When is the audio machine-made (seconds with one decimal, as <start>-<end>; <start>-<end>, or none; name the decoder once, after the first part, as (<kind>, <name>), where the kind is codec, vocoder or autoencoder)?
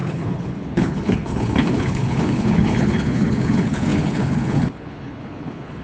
0.0-5.8 (codec, HILCodec)